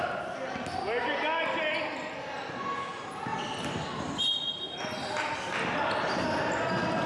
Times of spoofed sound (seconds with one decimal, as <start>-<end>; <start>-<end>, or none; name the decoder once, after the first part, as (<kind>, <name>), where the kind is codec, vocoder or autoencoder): none